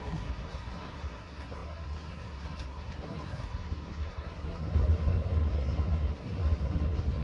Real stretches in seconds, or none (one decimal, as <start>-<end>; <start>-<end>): none